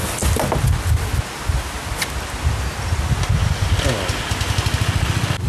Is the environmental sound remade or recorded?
recorded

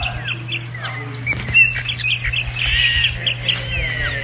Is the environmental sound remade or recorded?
recorded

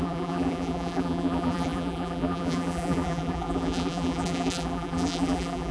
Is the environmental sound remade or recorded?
remade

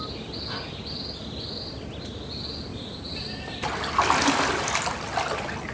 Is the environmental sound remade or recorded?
recorded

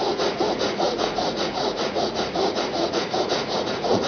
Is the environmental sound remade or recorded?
remade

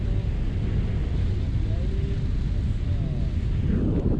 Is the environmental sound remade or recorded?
recorded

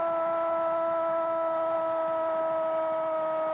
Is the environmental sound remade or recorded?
recorded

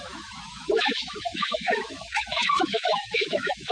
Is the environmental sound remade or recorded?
remade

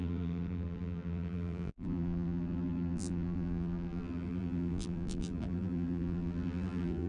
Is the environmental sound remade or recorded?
remade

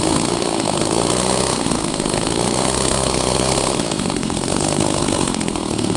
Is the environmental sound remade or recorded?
remade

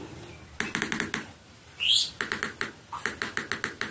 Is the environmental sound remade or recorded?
recorded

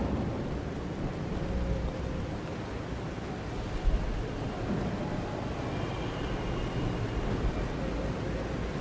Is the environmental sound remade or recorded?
recorded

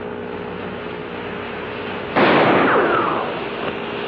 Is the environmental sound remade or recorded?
recorded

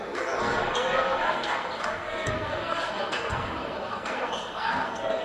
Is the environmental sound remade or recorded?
remade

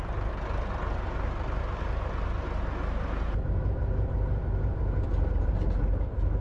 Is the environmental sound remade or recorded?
recorded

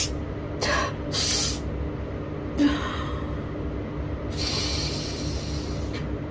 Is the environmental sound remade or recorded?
recorded